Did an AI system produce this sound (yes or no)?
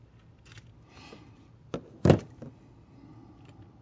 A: no